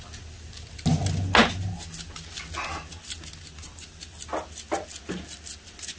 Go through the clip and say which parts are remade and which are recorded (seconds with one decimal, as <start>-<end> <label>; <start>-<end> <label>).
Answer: 0.0-6.0 recorded